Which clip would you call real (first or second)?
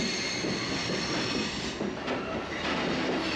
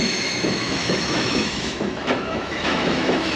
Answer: first